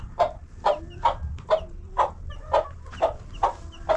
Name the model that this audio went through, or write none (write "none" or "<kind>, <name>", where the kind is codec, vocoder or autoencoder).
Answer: none